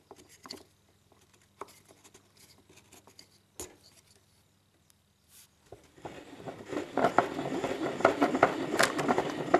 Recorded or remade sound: recorded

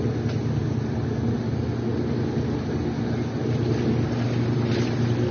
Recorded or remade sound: recorded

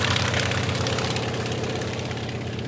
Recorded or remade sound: recorded